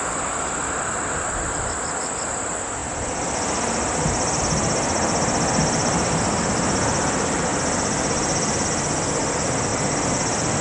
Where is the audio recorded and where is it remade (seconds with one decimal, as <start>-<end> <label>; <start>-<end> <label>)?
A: 0.0-10.6 recorded